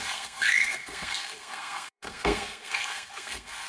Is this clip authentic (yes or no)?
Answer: no